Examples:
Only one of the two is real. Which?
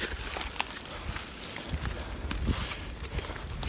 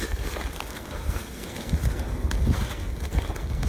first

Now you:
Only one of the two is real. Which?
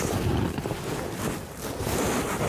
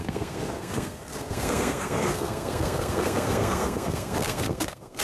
first